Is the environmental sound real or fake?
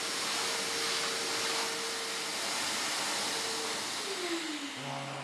real